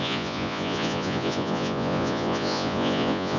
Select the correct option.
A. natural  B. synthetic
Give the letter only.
B